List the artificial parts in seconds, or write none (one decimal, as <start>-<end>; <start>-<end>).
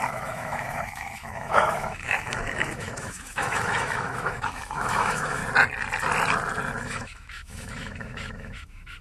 0.0-5.4; 6.8-9.0